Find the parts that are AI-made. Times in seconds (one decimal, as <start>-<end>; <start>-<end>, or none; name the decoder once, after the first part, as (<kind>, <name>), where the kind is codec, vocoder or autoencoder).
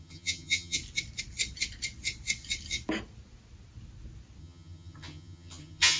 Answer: 0.0-0.8 (vocoder, HiFi-GAN); 4.4-6.0